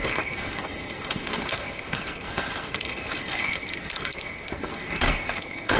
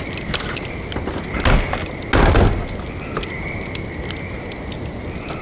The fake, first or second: first